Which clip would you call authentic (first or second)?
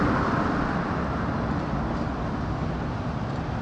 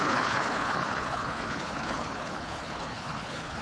first